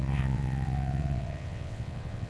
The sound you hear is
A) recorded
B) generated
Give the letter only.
B